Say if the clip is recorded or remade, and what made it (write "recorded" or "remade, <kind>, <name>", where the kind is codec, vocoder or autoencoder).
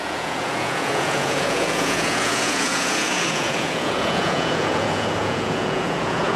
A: remade, vocoder, Vocos